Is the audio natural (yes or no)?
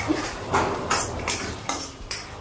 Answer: no